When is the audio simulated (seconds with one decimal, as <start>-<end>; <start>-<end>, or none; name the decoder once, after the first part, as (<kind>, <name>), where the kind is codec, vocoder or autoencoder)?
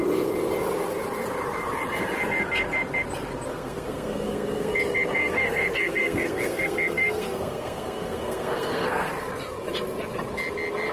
3.5-4.7 (codec, SNAC); 5.2-9.1